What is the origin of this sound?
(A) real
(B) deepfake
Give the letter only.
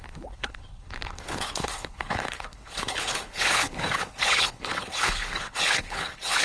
B